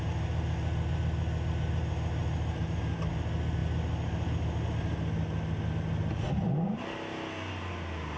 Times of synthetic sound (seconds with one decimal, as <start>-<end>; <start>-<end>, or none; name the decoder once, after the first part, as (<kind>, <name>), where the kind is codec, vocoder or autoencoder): none